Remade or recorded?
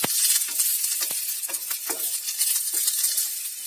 recorded